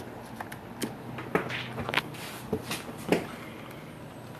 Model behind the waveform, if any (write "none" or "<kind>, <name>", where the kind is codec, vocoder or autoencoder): none